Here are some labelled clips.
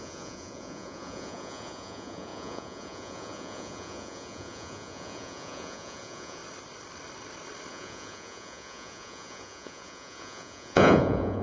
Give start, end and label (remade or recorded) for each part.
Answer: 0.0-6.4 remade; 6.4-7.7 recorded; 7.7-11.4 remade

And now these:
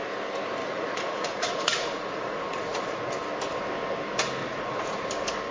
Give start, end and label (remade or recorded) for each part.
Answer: 0.0-0.6 recorded; 0.6-3.0 remade; 3.0-4.4 recorded; 4.4-5.1 remade; 5.1-5.5 recorded